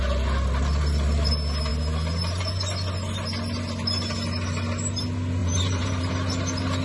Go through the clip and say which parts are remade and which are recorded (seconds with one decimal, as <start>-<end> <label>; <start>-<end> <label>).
0.0-5.4 recorded; 5.4-6.1 remade; 6.1-6.8 recorded